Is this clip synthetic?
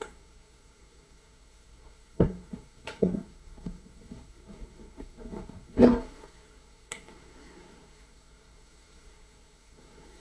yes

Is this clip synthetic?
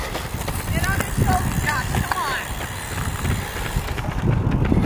no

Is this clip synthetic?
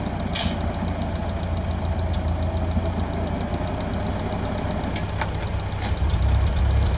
no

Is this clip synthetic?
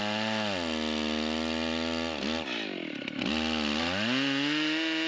no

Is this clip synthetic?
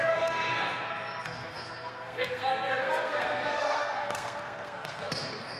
yes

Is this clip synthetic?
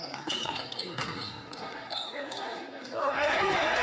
yes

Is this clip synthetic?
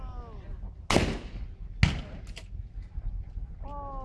no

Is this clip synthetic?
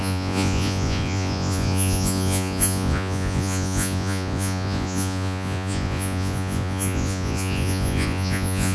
yes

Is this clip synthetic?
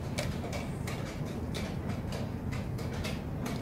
no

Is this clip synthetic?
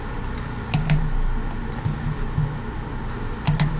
no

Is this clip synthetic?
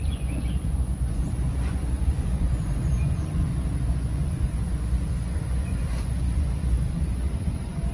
yes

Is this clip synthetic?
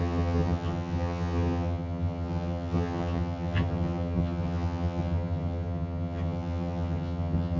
yes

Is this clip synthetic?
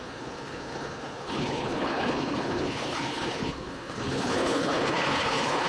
yes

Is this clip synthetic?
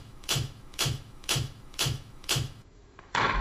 yes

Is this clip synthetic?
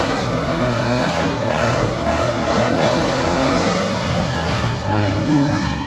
yes